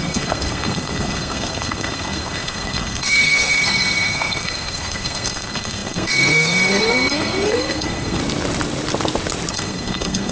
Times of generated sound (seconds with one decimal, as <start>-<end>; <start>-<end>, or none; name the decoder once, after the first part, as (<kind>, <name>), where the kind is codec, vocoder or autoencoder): 0.0-8.2 (codec, SNAC); 9.5-10.3